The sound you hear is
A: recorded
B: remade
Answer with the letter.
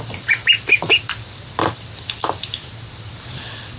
A